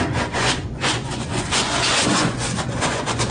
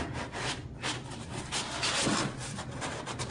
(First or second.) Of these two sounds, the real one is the second